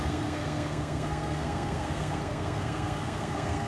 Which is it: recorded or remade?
remade